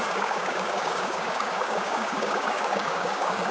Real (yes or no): no